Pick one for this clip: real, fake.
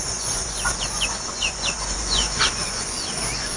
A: fake